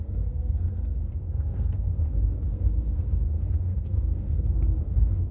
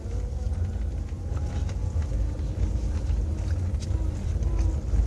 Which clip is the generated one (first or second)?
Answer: first